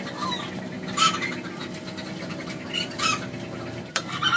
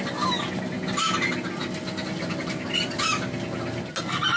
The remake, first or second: first